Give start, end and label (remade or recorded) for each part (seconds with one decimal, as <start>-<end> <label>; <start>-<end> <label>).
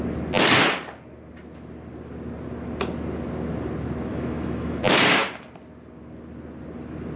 0.0-4.1 recorded; 4.1-4.8 remade; 4.8-7.2 recorded